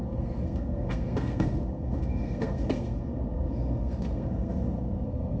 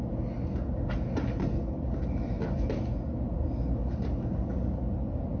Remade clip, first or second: first